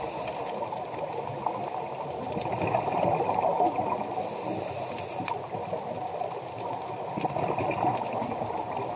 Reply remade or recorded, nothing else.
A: recorded